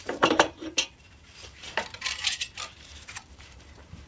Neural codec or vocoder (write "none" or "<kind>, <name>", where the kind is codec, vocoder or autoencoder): vocoder, BigVGAN v2